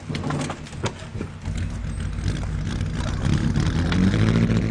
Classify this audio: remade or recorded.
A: recorded